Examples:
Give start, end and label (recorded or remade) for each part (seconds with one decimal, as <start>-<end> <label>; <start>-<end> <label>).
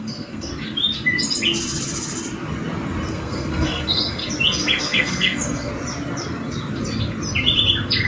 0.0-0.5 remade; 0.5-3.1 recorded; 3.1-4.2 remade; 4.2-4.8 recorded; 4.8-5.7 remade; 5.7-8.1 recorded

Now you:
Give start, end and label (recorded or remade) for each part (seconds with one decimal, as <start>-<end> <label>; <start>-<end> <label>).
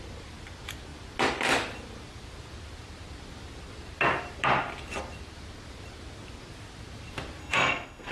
0.0-7.4 recorded; 7.4-8.1 remade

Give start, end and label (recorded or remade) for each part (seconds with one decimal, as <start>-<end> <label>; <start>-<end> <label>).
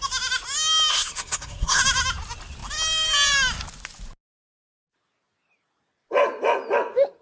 0.0-0.9 recorded; 0.9-1.8 remade; 1.8-7.2 recorded